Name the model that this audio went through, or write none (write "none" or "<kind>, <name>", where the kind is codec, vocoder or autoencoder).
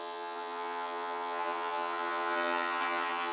vocoder, HiFi-GAN